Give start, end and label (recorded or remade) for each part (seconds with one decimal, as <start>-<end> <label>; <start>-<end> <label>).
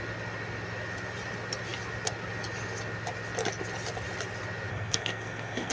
0.0-4.7 recorded; 4.7-5.7 remade